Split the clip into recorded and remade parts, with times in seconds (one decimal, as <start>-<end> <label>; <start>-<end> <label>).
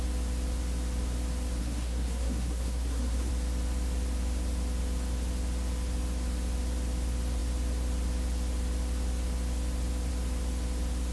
0.0-1.6 recorded; 1.6-3.3 remade; 3.3-11.1 recorded